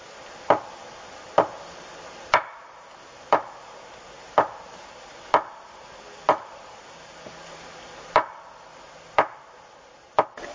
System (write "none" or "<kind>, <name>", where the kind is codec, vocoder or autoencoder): none